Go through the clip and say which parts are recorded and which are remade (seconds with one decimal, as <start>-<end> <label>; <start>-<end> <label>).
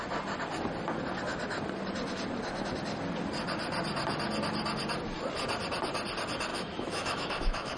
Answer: 0.0-6.5 recorded; 6.5-7.8 remade